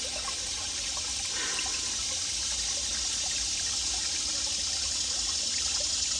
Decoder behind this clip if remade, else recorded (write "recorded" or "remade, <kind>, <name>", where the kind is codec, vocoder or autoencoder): recorded